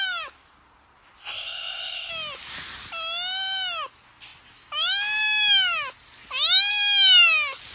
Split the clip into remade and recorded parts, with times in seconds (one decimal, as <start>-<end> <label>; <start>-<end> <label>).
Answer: 0.0-1.2 recorded; 1.2-2.1 remade; 2.1-7.7 recorded